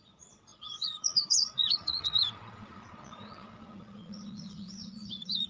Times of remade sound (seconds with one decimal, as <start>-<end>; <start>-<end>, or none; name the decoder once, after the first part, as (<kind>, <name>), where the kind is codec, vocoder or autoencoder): 0.0-5.5 (vocoder, Vocos)

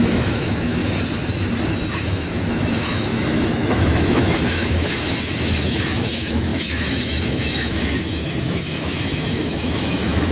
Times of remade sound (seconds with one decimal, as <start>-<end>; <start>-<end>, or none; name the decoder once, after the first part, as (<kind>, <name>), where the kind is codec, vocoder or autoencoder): 0.0-0.8 (autoencoder, DAC-VAE); 2.0-10.3

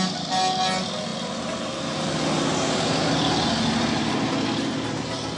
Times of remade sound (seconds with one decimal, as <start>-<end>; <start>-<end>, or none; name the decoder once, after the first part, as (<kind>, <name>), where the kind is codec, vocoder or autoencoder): none

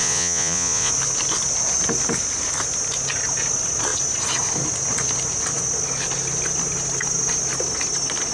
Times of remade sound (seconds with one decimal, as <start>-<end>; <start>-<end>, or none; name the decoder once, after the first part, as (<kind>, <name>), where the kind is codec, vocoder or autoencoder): 0.0-0.9 (vocoder, Vocos)

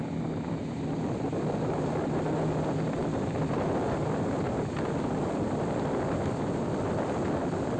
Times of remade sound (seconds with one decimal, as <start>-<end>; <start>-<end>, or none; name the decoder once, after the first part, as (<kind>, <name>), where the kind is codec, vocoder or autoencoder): 3.0-7.8 (vocoder, BigVGAN v2)

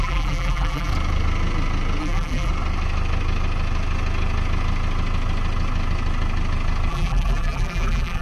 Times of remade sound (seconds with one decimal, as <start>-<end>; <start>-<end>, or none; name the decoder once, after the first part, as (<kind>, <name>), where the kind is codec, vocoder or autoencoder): 0.0-0.9 (vocoder, BigVGAN v2); 2.0-2.5; 6.9-8.2

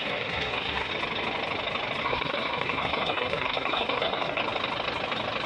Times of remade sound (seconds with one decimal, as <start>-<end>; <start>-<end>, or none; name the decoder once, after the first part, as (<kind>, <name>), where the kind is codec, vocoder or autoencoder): 0.0-0.9 (codec, SNAC); 2.0-4.4

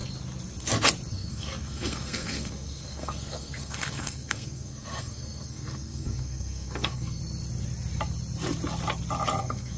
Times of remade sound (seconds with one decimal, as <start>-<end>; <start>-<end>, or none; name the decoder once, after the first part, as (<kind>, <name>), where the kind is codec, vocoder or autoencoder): 1.1-7.2 (codec, SNAC); 9.4-9.8